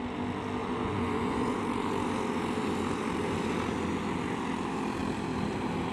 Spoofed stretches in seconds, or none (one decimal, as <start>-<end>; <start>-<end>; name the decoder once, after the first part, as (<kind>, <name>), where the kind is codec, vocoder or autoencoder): 0.6-1.6 (vocoder, Vocos)